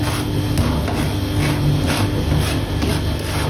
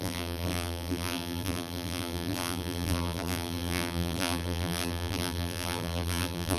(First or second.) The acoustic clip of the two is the first